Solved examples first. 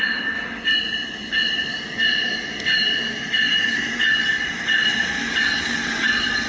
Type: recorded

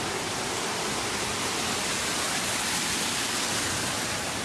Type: recorded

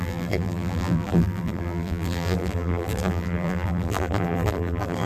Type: remade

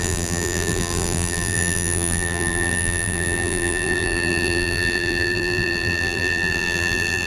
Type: remade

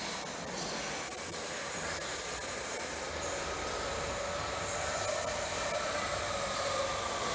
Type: recorded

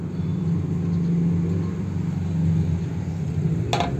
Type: recorded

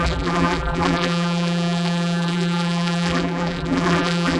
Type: remade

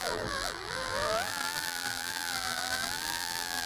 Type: remade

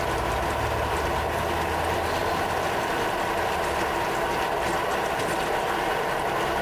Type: recorded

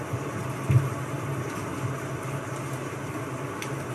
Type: recorded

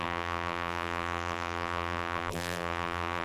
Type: remade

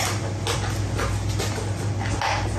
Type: recorded